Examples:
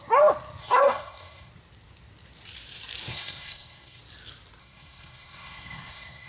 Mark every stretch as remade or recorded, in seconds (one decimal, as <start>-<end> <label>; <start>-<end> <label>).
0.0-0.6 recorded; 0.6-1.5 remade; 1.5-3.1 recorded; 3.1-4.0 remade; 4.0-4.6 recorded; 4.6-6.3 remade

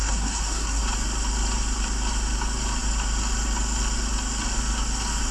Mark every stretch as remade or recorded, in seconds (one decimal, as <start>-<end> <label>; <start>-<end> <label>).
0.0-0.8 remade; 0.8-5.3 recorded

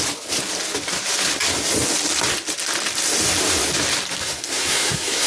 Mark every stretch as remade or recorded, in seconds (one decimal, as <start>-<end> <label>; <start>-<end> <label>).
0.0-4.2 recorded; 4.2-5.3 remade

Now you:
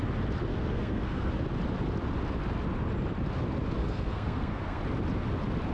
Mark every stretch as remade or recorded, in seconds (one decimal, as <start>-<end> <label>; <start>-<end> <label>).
0.0-0.5 recorded; 0.5-1.3 remade; 1.3-3.8 recorded; 3.8-4.8 remade; 4.8-5.7 recorded